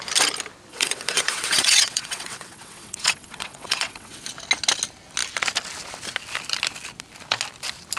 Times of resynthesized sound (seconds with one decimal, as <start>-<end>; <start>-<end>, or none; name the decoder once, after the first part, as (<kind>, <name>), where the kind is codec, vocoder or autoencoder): 0.7-4.3 (vocoder, WaveNeXt)

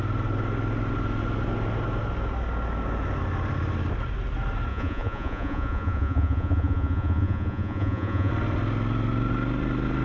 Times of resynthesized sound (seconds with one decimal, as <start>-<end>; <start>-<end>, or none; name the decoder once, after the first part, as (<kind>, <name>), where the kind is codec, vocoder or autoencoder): 4.7-8.3 (vocoder, Vocos)